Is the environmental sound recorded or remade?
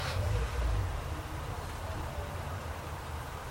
remade